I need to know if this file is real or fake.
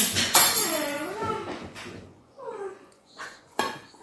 fake